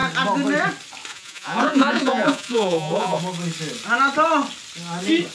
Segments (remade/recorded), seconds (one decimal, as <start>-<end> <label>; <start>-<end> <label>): 0.0-1.1 recorded; 1.1-3.2 remade; 3.2-5.3 recorded